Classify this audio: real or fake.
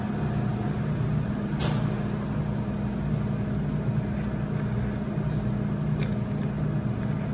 real